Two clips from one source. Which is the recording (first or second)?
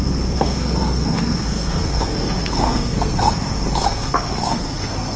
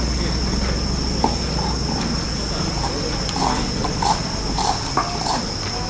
second